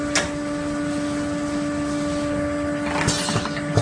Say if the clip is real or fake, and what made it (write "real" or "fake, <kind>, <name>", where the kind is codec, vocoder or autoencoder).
real